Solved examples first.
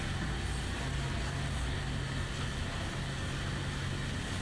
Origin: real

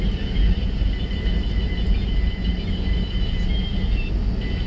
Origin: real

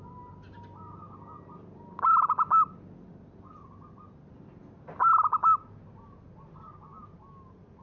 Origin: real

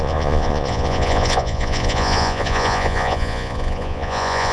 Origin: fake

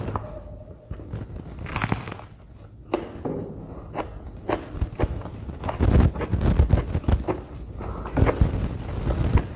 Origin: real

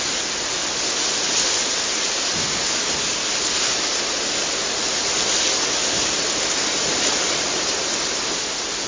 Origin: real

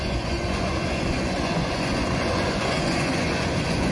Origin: fake